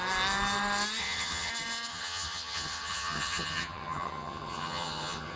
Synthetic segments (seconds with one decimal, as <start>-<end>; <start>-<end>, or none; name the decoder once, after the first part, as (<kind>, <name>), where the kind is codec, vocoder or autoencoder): 1.0-1.5 (vocoder, HiFi-GAN); 1.9-5.4